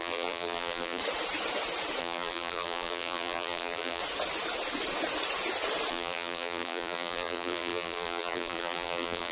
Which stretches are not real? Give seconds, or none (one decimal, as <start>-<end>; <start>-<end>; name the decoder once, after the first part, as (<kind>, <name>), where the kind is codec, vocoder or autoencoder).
0.0-1.0 (vocoder, BigVGAN v2); 2.0-4.0; 5.9-9.3